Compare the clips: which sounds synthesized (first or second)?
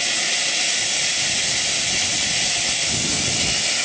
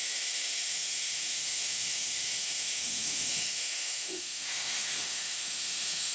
second